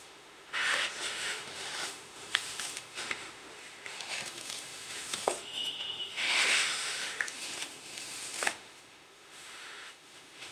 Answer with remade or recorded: remade